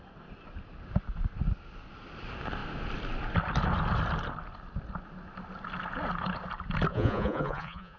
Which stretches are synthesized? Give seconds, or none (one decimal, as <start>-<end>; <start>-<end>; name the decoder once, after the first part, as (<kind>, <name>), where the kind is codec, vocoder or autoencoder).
6.9-8.0 (vocoder, Vocos)